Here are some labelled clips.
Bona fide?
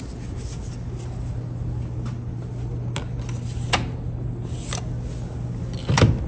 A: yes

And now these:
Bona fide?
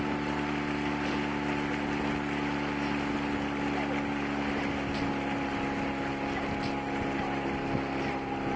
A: yes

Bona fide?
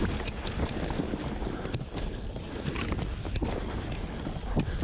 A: yes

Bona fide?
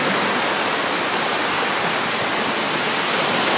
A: yes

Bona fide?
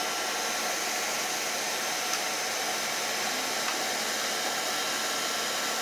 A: yes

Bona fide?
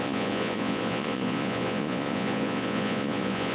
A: no